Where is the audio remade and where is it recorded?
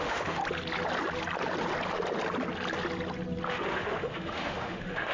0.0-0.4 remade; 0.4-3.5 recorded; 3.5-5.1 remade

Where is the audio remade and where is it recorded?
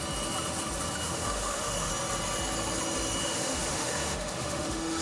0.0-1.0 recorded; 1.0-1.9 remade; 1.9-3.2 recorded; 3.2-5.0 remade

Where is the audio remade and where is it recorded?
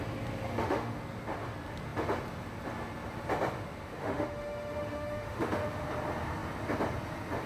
0.0-0.5 recorded; 0.5-1.0 remade; 1.0-3.9 recorded; 3.9-5.8 remade; 5.8-7.5 recorded